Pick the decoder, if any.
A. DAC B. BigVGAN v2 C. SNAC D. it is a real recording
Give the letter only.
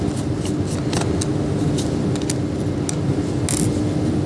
D